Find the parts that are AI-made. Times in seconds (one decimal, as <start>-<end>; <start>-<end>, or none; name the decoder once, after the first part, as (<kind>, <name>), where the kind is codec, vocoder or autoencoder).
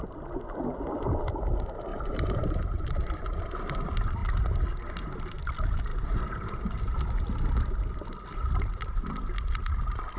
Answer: 1.9-3.4 (vocoder, BigVGAN v2); 5.9-7.0